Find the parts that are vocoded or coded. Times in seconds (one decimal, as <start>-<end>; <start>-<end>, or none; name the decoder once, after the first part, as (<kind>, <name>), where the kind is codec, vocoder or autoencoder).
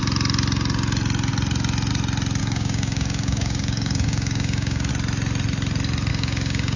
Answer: 2.4-4.9 (codec, DAC); 6.1-6.8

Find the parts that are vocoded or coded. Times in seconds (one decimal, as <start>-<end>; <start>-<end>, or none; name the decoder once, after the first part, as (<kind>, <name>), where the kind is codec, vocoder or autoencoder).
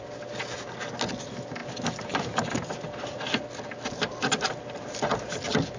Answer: none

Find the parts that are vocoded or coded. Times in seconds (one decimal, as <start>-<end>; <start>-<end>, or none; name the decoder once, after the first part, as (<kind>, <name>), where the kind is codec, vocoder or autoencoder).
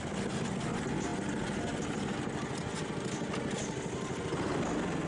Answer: none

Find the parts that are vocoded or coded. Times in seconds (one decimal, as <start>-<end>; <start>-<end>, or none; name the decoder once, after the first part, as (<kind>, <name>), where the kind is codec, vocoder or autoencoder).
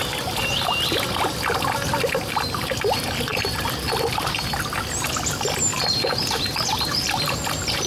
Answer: 5.7-7.2 (vocoder, BigVGAN v2)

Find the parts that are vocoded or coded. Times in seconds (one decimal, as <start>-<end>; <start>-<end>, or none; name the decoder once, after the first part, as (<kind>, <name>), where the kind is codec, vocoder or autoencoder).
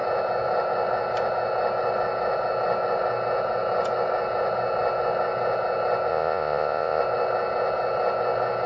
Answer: 6.1-7.0 (vocoder, Vocos)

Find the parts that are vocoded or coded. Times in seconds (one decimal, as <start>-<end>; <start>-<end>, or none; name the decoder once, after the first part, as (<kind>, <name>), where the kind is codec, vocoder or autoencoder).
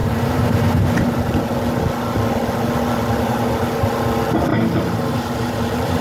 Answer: 0.0-1.2 (vocoder, BigVGAN v2); 4.5-6.0